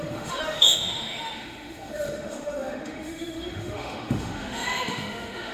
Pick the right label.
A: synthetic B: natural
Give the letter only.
A